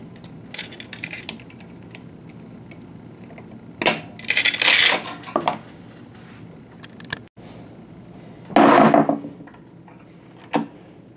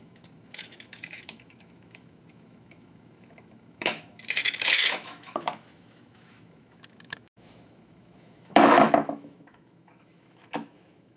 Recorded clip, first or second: first